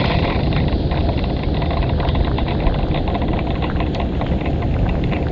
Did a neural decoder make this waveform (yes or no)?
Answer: no